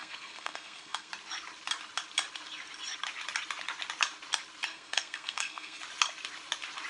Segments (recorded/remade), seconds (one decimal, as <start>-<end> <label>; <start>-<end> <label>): 0.0-1.1 remade; 1.1-4.7 recorded; 4.7-5.8 remade; 5.8-6.9 recorded

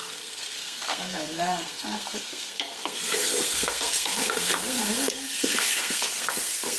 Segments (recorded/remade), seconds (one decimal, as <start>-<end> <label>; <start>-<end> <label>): 0.0-6.8 remade